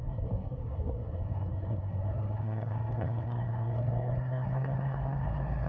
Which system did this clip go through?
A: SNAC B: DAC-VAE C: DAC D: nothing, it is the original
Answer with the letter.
A